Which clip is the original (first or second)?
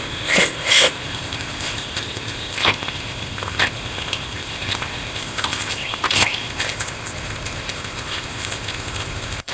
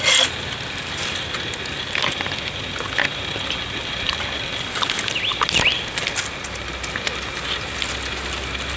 second